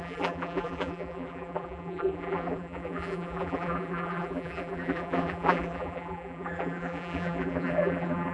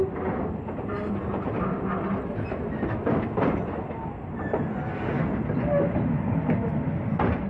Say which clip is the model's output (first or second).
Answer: first